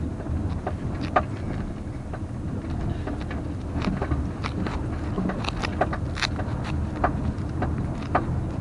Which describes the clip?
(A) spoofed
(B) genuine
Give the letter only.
B